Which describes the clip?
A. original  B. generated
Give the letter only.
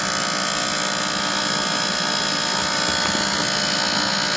A